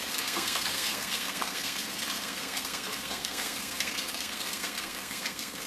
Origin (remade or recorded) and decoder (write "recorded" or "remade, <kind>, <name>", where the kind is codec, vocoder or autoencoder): remade, codec, SNAC